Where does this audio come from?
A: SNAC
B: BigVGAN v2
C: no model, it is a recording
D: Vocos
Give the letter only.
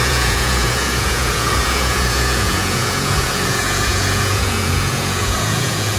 D